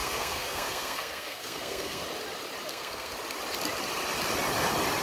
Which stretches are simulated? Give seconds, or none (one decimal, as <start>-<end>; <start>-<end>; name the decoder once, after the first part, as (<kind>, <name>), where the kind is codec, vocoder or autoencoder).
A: 0.0-2.0 (codec, SNAC); 2.7-3.1